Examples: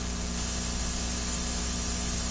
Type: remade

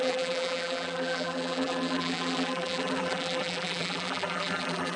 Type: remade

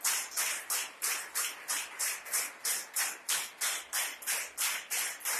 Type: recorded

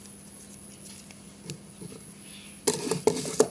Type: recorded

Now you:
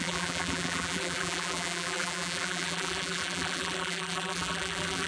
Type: remade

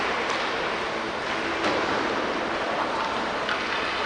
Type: remade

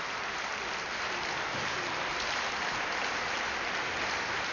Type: recorded